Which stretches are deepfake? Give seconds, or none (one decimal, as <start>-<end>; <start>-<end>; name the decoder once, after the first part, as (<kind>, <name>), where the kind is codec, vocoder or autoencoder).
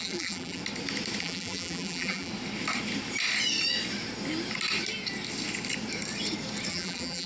0.0-0.6 (vocoder, BigVGAN v2); 1.2-2.3; 6.7-7.3